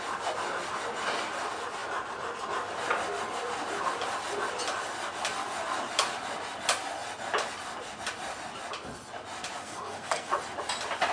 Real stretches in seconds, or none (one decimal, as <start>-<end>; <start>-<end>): 0.0-9.6; 10.3-11.1